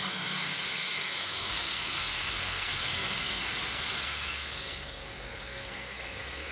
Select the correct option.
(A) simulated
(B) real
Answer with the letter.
A